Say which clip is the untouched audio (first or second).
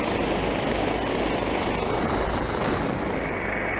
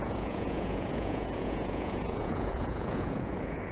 first